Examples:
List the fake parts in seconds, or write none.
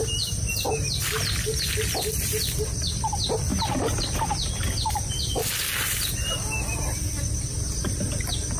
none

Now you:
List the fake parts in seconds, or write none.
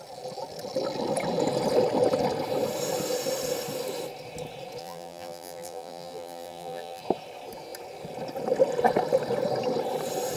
4.8-7.0 (vocoder, BigVGAN v2)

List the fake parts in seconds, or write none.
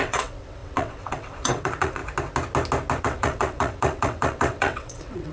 0.0-2.0 (vocoder, WaveNeXt); 3.0-5.3